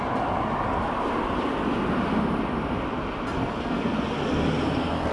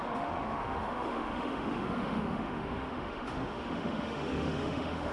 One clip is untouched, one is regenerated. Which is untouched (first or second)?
first